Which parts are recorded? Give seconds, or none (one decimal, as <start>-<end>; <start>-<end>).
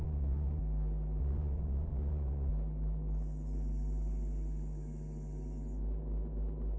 0.6-1.2; 2.5-6.8